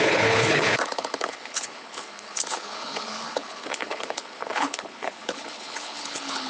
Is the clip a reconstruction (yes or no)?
yes